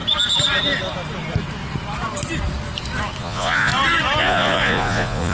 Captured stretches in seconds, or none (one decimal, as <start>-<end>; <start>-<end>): 0.0-3.2; 3.7-4.2